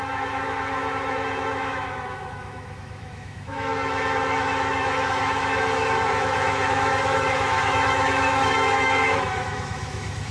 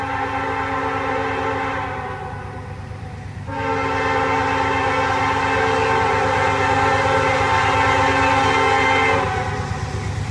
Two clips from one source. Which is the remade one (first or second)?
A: first